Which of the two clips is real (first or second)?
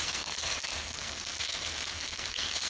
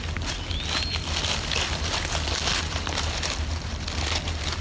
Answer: second